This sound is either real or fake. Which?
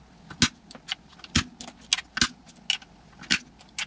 real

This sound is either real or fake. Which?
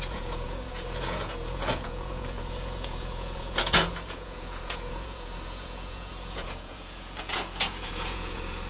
fake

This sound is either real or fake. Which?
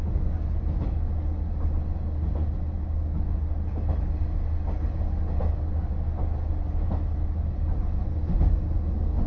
real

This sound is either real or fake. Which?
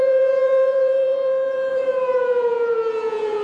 fake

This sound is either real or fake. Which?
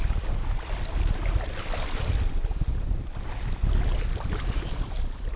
real